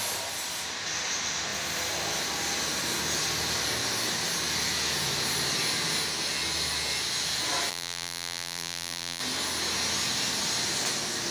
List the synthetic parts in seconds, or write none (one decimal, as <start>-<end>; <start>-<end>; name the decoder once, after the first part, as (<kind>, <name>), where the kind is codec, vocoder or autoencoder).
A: 7.7-9.2 (vocoder, BigVGAN v2)